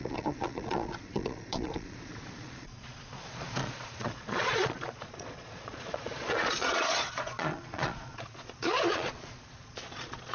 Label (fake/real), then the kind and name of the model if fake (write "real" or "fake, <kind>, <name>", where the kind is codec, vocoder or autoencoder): fake, vocoder, Vocos